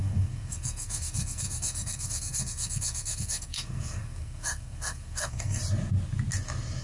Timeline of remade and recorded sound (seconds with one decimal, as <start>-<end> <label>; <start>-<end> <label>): 0.0-5.6 remade; 5.6-6.8 recorded